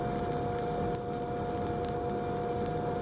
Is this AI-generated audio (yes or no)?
no